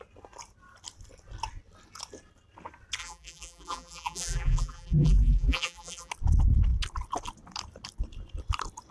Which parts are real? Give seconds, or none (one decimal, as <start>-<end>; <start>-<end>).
0.0-3.0; 6.1-8.9